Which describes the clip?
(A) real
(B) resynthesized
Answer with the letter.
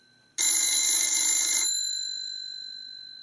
A